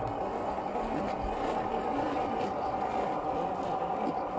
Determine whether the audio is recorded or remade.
recorded